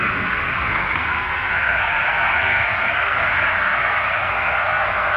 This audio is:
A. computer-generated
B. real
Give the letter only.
A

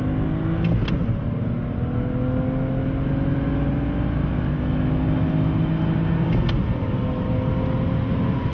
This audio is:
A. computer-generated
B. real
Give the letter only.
B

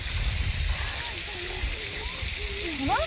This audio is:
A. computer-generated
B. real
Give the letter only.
B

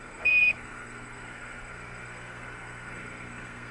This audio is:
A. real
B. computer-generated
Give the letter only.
B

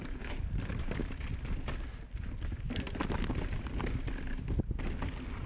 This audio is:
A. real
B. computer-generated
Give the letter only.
A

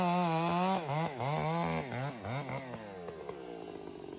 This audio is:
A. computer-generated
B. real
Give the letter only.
B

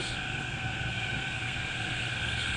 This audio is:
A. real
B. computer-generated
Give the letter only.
B